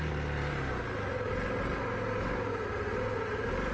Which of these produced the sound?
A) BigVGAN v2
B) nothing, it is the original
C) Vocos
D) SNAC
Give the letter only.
B